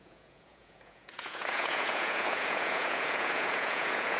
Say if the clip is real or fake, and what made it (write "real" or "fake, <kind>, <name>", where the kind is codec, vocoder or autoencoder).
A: fake, vocoder, Vocos